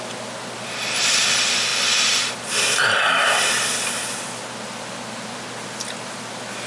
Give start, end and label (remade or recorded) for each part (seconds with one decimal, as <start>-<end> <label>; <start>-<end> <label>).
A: 0.0-6.7 recorded